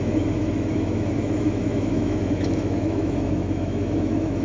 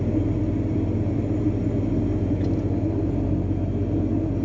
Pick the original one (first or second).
second